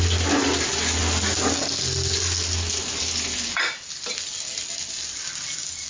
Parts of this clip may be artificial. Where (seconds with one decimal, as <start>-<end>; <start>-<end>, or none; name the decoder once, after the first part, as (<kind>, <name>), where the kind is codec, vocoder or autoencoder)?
none